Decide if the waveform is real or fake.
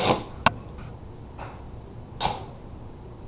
real